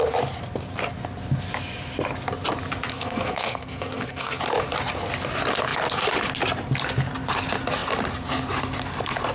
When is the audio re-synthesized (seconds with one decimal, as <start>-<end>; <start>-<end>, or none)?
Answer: 2.9-4.4